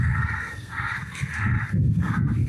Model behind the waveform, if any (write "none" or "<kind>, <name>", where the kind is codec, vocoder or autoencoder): codec, SNAC